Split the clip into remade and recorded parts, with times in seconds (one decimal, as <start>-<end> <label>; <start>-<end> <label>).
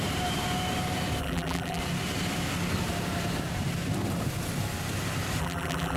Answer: 0.0-1.2 recorded; 1.2-1.8 remade; 1.8-5.4 recorded; 5.4-6.0 remade